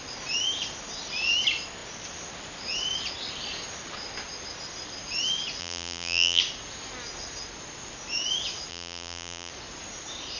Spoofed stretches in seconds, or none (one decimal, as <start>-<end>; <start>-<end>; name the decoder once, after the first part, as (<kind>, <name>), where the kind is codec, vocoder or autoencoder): 5.6-6.4 (vocoder, BigVGAN v2); 8.7-9.5